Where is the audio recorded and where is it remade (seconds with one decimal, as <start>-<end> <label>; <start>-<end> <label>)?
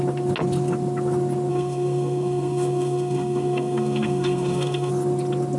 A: 0.0-1.5 recorded; 1.5-4.9 remade; 4.9-5.6 recorded